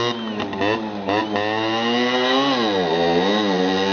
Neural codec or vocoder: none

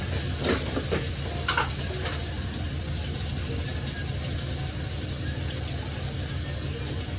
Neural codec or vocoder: none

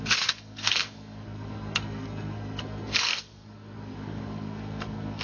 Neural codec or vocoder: codec, SNAC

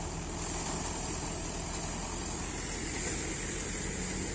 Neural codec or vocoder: none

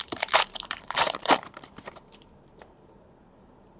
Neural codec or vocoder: vocoder, BigVGAN v2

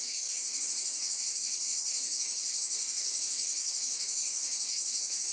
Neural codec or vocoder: codec, DAC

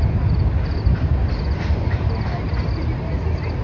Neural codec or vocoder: none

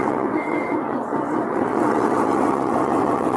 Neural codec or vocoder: vocoder, WaveNeXt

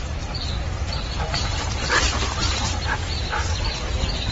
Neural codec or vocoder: vocoder, BigVGAN v2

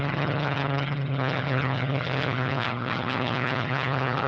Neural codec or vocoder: vocoder, HiFi-GAN